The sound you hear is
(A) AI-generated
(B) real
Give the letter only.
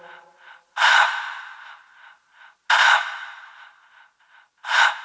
B